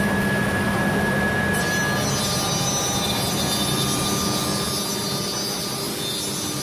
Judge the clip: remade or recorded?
recorded